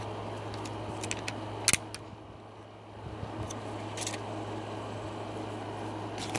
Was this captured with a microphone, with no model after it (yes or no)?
yes